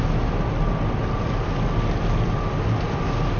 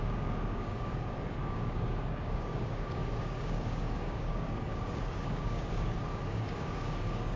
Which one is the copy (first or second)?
second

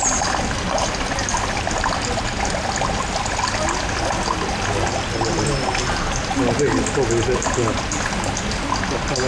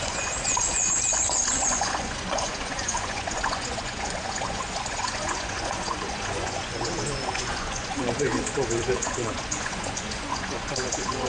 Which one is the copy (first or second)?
second